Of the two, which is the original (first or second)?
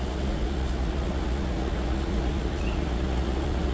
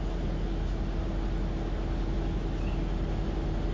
second